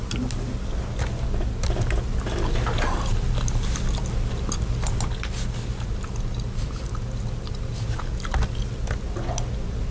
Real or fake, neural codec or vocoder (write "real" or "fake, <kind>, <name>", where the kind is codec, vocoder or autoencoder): real